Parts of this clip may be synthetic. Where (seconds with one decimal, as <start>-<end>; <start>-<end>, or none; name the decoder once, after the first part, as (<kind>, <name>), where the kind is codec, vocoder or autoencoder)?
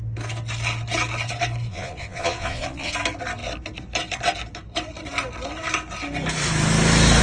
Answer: 1.7-2.9 (vocoder, Vocos)